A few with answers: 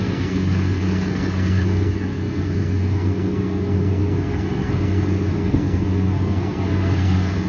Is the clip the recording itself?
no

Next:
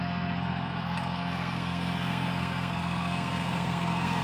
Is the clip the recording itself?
no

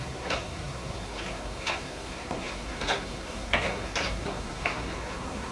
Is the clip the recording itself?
no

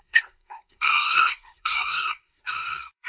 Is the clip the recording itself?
no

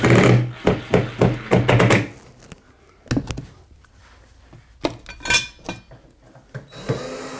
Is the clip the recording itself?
yes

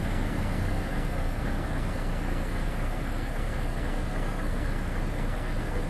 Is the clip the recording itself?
no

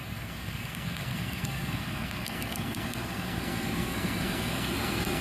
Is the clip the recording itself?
no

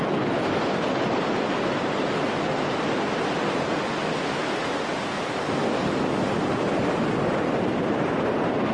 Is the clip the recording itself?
yes